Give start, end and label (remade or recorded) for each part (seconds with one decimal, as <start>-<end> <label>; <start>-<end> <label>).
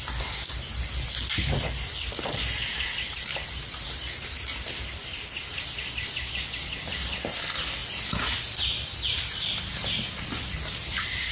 0.0-11.3 recorded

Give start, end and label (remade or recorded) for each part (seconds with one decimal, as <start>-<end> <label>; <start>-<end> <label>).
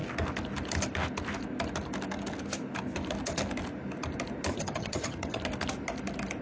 0.0-4.5 recorded; 4.5-5.4 remade; 5.4-6.4 recorded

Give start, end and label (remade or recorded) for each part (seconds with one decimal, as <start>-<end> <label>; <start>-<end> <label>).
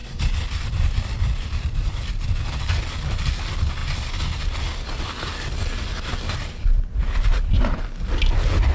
0.0-2.5 remade; 2.5-8.7 recorded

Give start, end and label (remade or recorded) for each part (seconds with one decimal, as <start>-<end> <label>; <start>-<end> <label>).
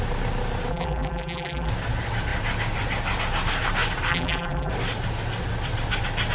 0.0-0.7 recorded; 0.7-1.7 remade; 1.7-4.1 recorded; 4.1-4.7 remade; 4.7-6.3 recorded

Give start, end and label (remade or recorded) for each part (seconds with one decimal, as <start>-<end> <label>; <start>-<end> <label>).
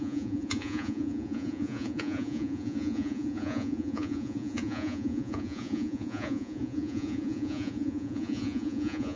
0.0-9.2 remade